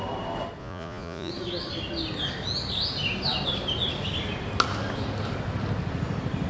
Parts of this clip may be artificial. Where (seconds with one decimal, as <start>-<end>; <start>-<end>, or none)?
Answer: 0.6-1.3